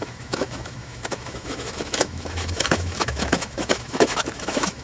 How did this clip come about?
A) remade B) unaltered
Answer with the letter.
A